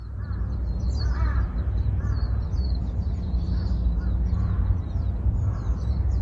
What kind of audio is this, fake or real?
fake